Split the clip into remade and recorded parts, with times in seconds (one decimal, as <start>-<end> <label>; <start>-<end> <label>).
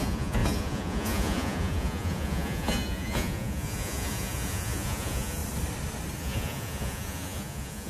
0.0-5.4 remade; 5.4-6.2 recorded; 6.2-7.9 remade